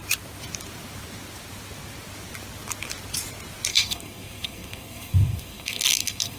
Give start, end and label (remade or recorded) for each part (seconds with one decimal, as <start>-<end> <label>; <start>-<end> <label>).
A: 0.0-3.7 recorded; 3.7-6.4 remade